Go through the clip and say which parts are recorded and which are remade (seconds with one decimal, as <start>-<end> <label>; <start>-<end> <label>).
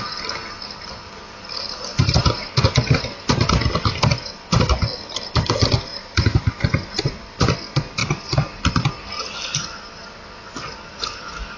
0.0-1.9 recorded; 1.9-2.6 remade; 2.6-5.9 recorded; 5.9-6.5 remade; 6.5-8.0 recorded; 8.0-8.6 remade; 8.6-11.6 recorded